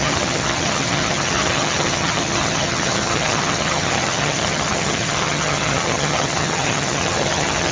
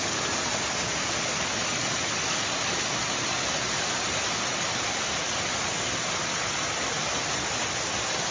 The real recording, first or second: second